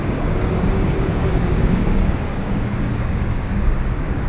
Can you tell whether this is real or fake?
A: fake